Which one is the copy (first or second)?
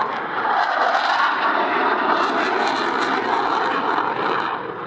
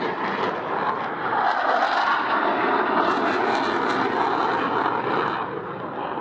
first